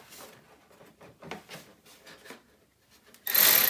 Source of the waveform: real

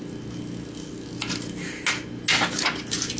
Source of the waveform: real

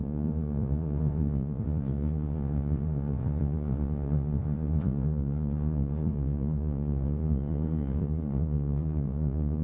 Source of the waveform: fake